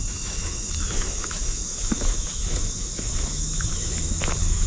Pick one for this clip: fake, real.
fake